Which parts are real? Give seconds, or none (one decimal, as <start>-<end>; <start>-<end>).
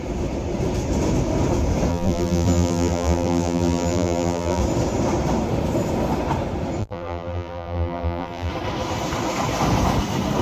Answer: 0.0-1.9; 4.6-6.8; 8.5-10.4